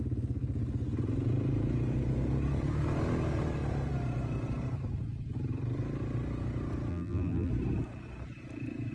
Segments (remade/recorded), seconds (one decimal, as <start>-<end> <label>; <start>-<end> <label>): 0.0-6.9 recorded; 6.9-7.5 remade; 7.5-8.9 recorded